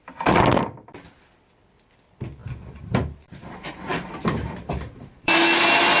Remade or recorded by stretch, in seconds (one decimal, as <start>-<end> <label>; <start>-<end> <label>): 0.0-2.4 recorded; 2.4-5.3 remade; 5.3-6.0 recorded